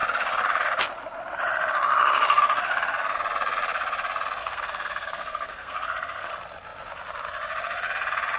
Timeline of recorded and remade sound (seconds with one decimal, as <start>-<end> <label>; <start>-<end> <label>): 0.0-4.4 recorded; 4.4-6.3 remade; 6.3-8.4 recorded